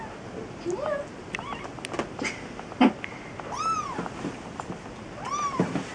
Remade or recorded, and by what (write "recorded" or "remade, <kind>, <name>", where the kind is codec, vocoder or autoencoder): recorded